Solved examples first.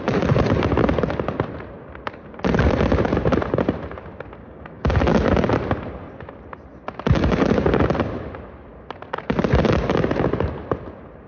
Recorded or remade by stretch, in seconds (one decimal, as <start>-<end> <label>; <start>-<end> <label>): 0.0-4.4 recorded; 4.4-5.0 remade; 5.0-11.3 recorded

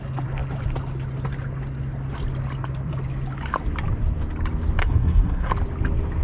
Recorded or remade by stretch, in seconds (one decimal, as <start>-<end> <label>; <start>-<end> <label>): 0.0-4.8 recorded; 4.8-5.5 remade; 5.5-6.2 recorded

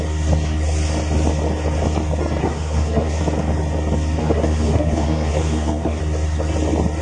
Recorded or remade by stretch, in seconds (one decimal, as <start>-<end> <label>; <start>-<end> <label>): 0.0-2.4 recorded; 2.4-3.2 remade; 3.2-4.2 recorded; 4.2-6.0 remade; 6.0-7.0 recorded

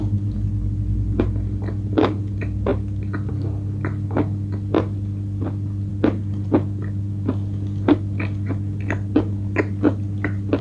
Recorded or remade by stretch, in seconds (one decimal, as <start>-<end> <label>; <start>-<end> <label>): 0.0-10.6 recorded